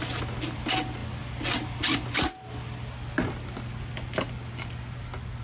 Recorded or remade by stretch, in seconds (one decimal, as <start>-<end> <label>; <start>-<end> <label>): 0.0-5.4 recorded